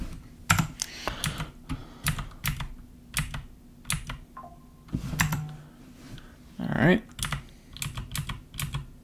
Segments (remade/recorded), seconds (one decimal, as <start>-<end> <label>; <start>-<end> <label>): 0.0-1.8 recorded; 1.8-2.9 remade; 2.9-9.0 recorded